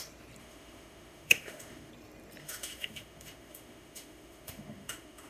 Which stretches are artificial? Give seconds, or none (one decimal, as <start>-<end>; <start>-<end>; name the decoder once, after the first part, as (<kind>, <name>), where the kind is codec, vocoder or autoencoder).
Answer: 0.4-1.9 (autoencoder, DAC-VAE); 2.4-5.3

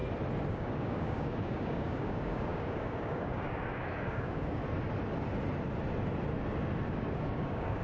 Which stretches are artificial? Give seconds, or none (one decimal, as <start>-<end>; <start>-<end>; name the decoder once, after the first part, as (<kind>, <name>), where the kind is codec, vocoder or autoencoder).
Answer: 0.5-4.6 (codec, DAC); 6.9-7.8

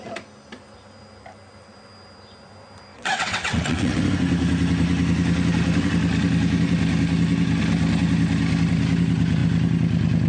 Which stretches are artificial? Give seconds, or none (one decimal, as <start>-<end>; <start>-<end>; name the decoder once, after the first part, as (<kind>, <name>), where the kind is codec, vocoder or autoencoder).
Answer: 2.9-4.0 (vocoder, WaveNeXt)

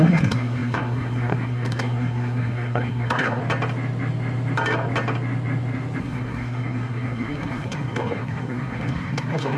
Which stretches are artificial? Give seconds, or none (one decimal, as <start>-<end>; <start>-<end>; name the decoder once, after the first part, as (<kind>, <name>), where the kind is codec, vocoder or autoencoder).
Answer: 0.0-3.4 (codec, SNAC); 6.0-9.6

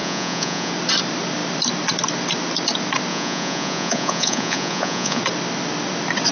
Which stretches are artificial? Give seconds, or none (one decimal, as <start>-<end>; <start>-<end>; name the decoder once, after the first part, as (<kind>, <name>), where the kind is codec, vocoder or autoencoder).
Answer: 0.0-0.7 (vocoder, Vocos); 3.1-5.2

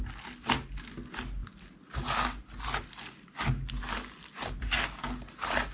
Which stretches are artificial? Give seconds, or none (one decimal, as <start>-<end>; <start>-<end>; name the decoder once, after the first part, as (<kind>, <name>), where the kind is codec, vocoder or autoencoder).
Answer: none

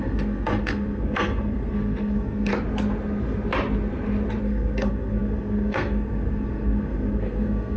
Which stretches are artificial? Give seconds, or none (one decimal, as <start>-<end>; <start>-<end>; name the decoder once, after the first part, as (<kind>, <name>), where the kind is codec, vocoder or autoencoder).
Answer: 0.0-2.5 (codec, SNAC); 4.4-7.8

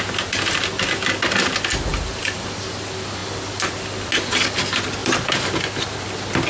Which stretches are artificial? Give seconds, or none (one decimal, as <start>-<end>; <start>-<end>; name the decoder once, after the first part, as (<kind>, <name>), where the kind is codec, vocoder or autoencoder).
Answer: 1.9-2.7 (vocoder, BigVGAN v2); 3.2-3.7; 5.0-5.5